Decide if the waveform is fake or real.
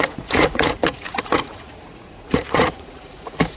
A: fake